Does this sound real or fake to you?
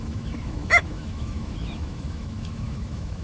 fake